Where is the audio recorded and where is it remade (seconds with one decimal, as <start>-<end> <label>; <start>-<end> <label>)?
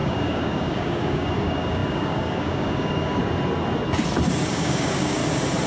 0.0-3.2 remade; 3.2-4.5 recorded; 4.5-5.2 remade; 5.2-5.7 recorded